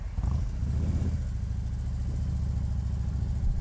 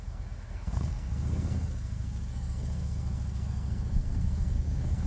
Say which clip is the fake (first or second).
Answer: second